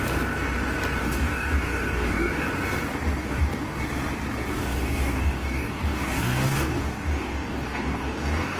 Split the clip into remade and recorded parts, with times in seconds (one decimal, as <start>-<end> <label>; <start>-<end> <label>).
0.0-1.0 recorded; 1.0-2.5 remade; 2.5-3.2 recorded; 3.2-3.8 remade; 3.8-4.5 recorded; 4.5-8.6 remade